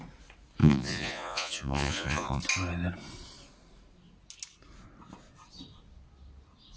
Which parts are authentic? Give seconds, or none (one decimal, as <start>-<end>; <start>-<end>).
0.0-0.6; 2.4-6.8